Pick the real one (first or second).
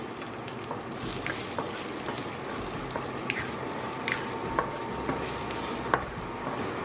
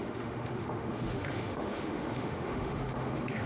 first